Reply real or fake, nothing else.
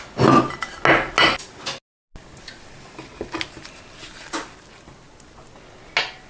real